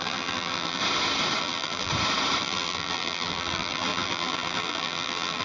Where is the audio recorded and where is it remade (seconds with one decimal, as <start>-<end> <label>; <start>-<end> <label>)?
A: 0.0-0.8 remade; 0.8-1.4 recorded; 1.4-1.9 remade; 1.9-2.4 recorded; 2.4-5.4 remade